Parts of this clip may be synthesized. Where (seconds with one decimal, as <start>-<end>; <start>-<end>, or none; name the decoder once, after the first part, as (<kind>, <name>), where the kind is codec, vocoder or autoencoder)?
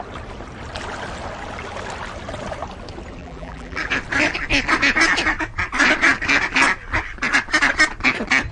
3.2-3.9 (vocoder, BigVGAN v2)